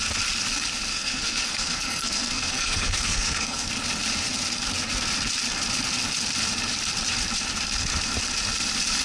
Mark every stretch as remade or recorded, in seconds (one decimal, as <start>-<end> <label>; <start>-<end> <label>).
0.0-0.9 recorded; 0.9-3.7 remade; 3.7-9.0 recorded